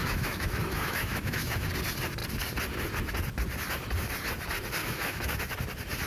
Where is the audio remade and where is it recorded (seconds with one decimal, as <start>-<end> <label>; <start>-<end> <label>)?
0.0-1.7 remade; 1.7-4.8 recorded; 4.8-5.4 remade; 5.4-6.1 recorded